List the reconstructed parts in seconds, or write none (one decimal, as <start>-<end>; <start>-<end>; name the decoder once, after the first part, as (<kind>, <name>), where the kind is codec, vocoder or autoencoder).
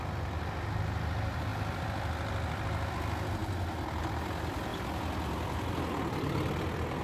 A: none